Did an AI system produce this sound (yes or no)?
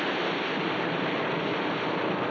yes